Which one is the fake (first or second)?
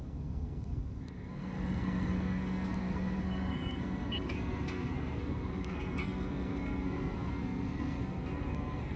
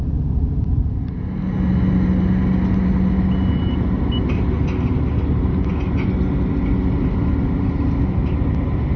first